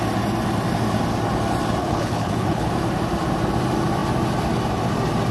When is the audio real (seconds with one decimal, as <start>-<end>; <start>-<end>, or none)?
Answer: 0.0-1.8; 2.7-5.3